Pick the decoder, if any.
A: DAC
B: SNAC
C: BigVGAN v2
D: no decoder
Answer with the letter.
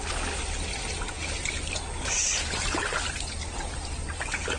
D